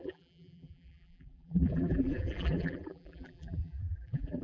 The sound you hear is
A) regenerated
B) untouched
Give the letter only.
A